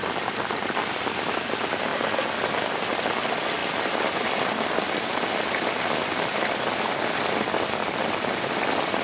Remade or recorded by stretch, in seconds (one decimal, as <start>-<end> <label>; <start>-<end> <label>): 0.0-9.0 recorded